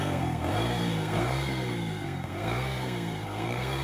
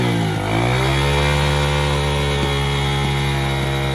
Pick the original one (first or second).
second